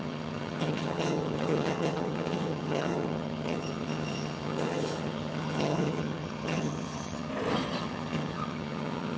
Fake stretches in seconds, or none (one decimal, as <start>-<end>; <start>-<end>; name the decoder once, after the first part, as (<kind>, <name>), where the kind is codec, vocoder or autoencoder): 0.0-7.3 (vocoder, HiFi-GAN); 7.8-9.2